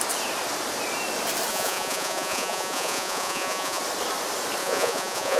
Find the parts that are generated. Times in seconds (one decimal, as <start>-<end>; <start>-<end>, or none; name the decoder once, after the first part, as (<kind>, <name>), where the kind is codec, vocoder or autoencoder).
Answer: 1.5-3.8 (vocoder, Vocos); 4.6-5.4

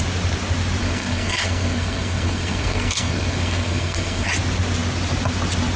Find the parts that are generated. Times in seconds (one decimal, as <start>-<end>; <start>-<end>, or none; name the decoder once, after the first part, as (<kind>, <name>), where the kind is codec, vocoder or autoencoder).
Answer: 0.8-4.3 (codec, SNAC)